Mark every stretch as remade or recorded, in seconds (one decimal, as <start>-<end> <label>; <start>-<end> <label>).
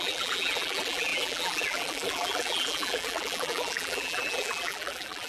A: 0.0-5.3 remade